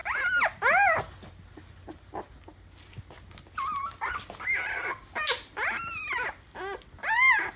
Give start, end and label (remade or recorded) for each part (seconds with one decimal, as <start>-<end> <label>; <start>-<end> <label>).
0.0-7.6 recorded